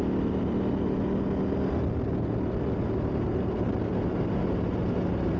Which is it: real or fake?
real